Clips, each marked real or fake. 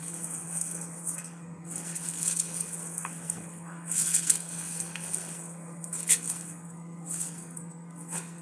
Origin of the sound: fake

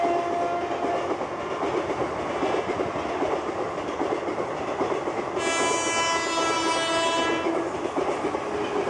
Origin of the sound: real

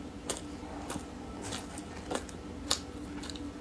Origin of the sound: real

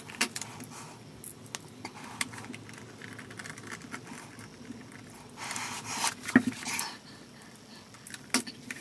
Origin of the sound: real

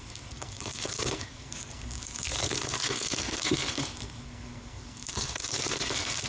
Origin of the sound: fake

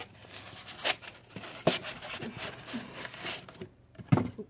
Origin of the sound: real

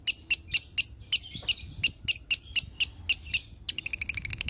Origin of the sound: real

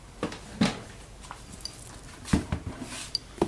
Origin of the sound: real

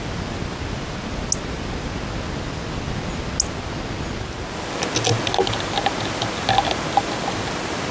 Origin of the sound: real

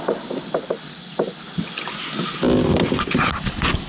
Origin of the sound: real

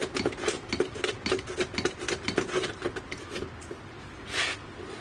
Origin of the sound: real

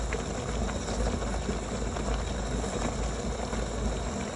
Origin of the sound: real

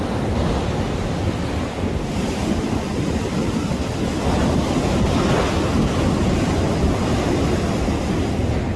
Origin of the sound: real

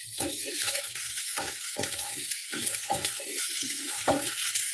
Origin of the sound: fake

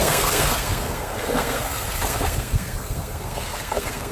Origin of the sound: fake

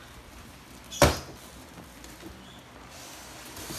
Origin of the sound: real